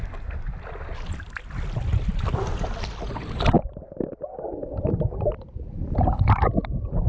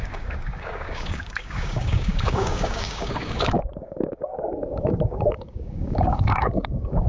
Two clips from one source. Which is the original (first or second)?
first